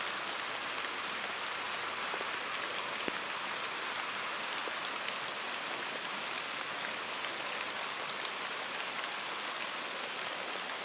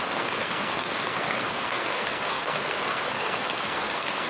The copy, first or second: second